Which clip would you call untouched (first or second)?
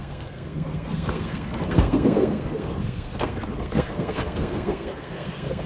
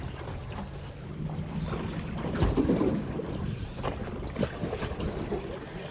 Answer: second